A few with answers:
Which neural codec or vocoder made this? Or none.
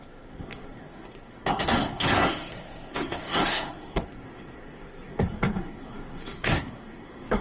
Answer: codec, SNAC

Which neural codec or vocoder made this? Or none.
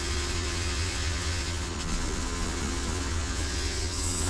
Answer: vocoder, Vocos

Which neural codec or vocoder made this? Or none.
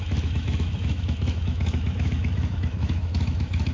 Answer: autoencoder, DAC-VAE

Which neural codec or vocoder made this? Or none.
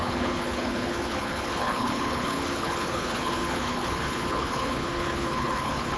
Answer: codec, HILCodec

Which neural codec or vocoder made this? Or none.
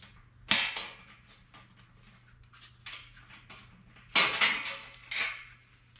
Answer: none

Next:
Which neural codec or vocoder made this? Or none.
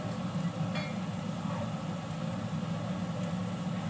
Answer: none